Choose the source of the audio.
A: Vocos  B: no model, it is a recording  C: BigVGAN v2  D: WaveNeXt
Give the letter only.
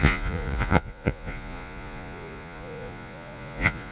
A